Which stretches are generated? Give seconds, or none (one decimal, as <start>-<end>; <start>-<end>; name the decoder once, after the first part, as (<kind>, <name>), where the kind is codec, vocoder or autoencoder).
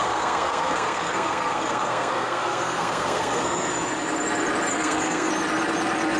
0.0-3.7 (codec, SNAC); 4.7-5.3